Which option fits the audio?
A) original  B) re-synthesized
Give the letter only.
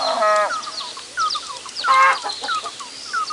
A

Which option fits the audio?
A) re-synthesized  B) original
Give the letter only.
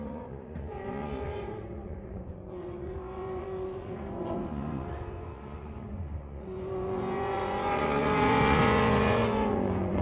A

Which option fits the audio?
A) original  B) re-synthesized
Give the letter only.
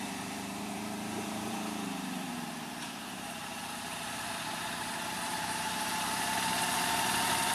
B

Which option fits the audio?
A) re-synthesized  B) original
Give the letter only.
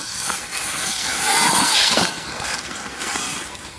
A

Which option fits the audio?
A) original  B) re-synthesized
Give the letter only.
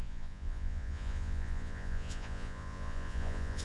B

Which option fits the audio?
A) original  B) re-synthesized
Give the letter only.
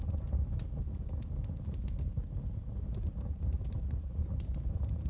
A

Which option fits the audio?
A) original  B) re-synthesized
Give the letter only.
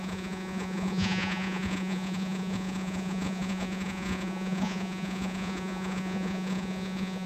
B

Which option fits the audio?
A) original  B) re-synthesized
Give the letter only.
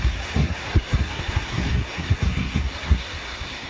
B